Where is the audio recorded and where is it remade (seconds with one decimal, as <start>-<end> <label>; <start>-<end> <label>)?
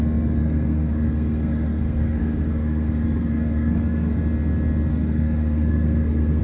0.0-0.4 recorded; 0.4-4.2 remade; 4.2-4.9 recorded; 4.9-6.4 remade